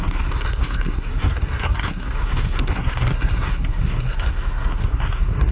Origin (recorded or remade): remade